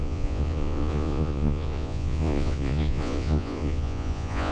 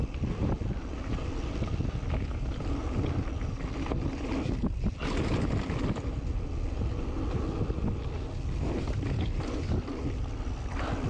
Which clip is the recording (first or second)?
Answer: second